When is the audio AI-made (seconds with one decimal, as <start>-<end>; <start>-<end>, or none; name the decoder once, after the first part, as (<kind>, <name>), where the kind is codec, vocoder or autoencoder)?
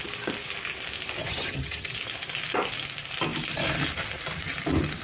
1.2-1.9 (vocoder, HiFi-GAN)